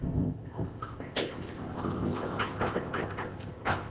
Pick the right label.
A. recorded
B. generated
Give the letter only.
B